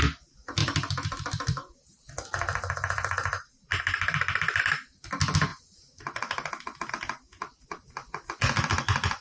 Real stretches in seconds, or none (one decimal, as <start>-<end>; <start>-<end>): 0.0-9.2